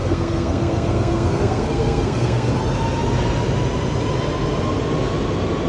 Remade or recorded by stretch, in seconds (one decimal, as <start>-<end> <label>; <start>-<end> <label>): 0.0-2.5 remade; 2.5-5.7 recorded